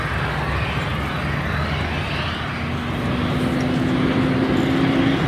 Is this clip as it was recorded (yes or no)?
yes